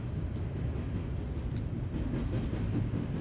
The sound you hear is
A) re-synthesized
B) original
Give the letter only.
B